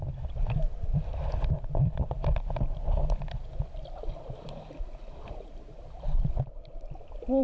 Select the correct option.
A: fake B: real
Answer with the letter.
B